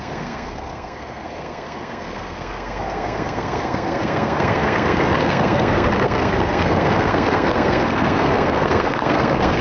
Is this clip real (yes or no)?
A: no